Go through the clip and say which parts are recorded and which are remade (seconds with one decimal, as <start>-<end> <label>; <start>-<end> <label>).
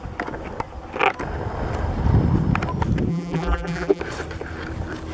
0.0-3.1 recorded; 3.1-4.0 remade; 4.0-5.1 recorded